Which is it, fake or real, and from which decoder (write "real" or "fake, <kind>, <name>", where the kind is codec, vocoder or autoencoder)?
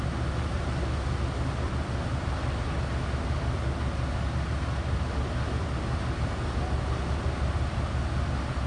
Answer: real